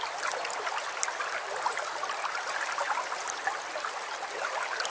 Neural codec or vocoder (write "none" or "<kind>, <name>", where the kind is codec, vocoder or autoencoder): none